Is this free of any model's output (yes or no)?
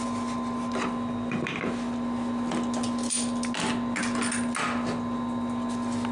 yes